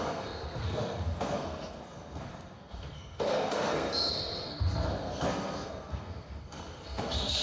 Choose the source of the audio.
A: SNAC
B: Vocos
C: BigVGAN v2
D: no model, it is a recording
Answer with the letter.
A